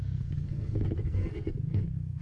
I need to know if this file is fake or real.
fake